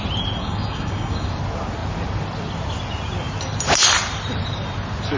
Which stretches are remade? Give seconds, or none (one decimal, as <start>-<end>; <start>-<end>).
0.4-1.3